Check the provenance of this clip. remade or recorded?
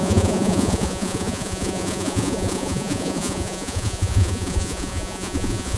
remade